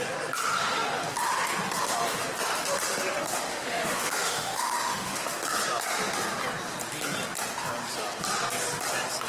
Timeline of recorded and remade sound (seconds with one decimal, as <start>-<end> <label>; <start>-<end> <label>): 0.0-3.5 recorded; 3.5-5.2 remade; 5.2-9.3 recorded

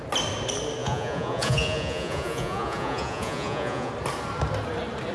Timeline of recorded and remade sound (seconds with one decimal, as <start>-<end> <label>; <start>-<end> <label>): 0.0-0.8 recorded; 0.8-3.9 remade; 3.9-5.1 recorded